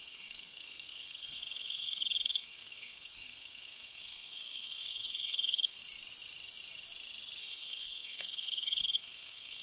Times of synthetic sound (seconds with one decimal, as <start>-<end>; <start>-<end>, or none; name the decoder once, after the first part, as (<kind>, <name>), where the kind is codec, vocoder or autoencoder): 0.0-5.8 (codec, SNAC); 7.4-9.6